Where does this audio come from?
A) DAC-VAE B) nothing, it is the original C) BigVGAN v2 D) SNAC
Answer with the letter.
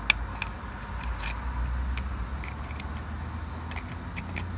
B